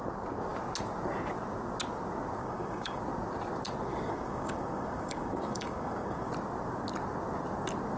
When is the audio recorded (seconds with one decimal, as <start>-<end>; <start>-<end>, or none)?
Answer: 0.0-2.4; 3.0-3.9; 6.3-8.0